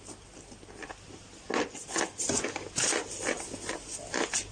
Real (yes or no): yes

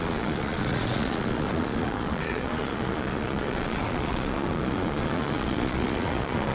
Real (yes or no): no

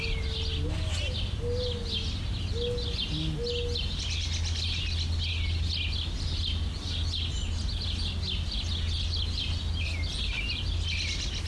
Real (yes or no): yes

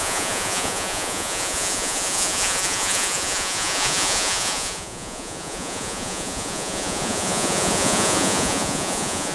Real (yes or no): no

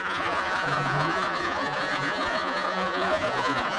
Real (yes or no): no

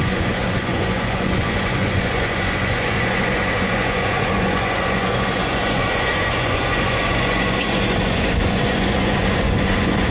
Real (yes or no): no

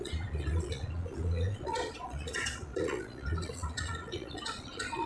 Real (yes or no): no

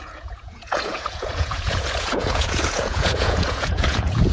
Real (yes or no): no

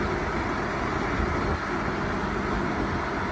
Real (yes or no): yes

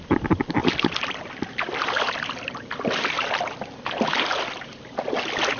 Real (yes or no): yes